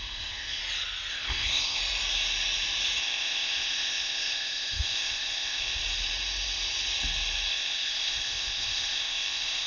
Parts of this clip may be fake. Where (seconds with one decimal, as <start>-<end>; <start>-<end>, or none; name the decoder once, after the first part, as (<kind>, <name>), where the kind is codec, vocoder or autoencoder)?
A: 0.0-0.6 (codec, ZipCodec); 1.1-1.8; 3.0-5.8; 7.5-9.7